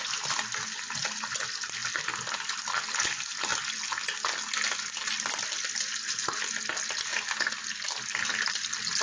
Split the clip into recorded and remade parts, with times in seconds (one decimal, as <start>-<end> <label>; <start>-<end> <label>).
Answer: 0.0-9.0 recorded